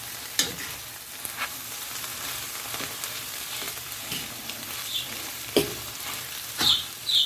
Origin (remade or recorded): remade